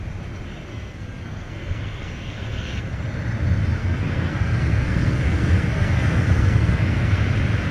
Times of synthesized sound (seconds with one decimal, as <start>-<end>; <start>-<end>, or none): 0.7-3.0; 3.8-7.2